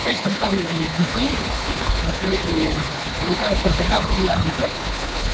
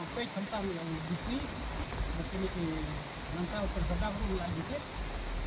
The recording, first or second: second